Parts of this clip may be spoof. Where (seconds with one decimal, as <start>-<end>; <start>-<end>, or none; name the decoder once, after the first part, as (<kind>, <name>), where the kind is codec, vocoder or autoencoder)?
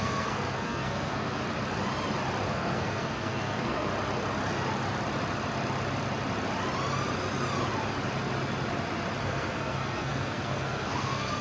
0.0-1.4 (codec, SNAC); 2.5-3.9; 9.2-11.4